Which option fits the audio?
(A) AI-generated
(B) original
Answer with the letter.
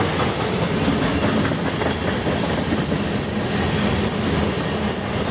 B